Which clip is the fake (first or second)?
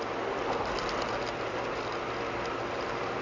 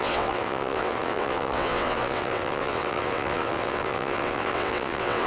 second